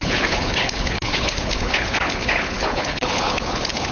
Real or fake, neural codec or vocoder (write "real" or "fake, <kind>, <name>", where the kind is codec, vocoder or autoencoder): fake, codec, HILCodec